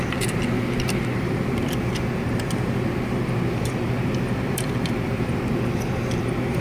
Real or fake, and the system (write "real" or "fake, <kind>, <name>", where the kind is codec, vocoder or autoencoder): fake, vocoder, BigVGAN v2